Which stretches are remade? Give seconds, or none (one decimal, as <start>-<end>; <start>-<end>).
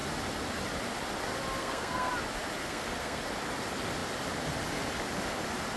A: 1.6-2.1; 2.6-3.2